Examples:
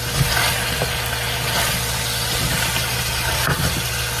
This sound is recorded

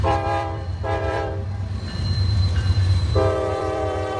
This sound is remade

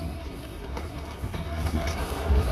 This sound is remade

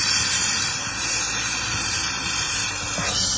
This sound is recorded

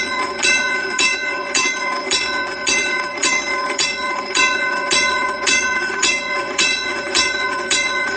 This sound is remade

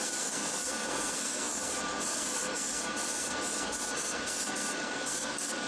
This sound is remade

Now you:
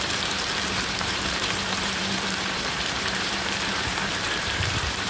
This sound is remade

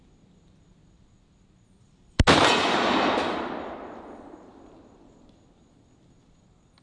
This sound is recorded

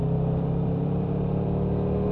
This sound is remade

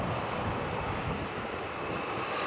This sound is remade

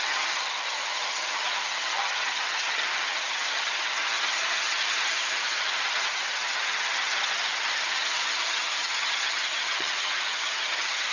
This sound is remade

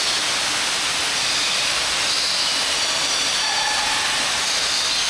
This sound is recorded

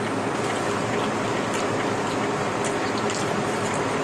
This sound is recorded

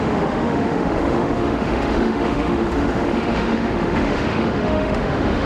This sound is remade